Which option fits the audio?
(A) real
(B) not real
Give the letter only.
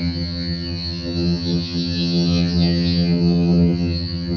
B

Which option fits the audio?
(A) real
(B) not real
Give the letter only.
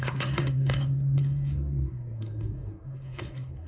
B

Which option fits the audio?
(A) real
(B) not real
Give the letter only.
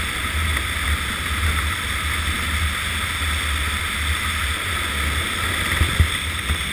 A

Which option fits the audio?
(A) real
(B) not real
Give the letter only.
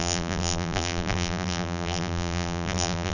B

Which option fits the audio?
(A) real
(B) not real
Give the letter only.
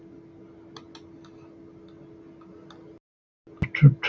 A